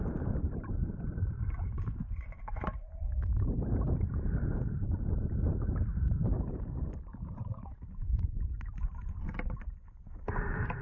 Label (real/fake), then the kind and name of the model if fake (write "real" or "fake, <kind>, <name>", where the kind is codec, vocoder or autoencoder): fake, vocoder, BigVGAN v2